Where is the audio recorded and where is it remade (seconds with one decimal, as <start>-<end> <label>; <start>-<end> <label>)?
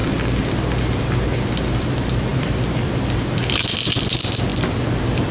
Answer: 0.0-1.7 recorded; 1.7-5.3 remade